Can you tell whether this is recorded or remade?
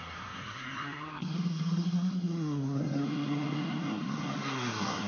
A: remade